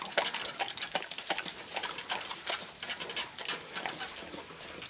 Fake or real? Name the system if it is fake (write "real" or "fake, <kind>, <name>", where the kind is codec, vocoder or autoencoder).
real